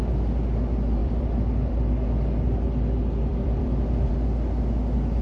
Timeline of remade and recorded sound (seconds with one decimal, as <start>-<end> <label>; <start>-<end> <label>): 0.0-1.0 recorded; 1.0-4.1 remade; 4.1-5.2 recorded